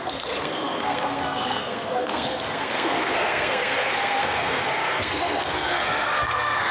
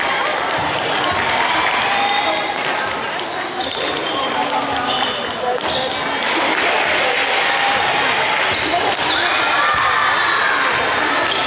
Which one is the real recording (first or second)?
second